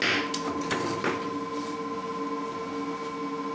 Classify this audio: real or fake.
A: real